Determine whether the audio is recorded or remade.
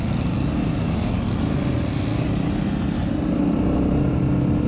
recorded